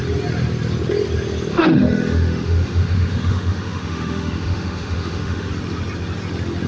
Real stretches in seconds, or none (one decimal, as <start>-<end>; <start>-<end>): 0.0-1.5; 5.5-6.7